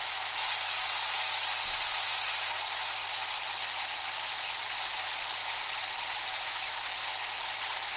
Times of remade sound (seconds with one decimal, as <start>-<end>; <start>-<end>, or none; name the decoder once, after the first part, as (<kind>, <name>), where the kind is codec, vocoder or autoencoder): none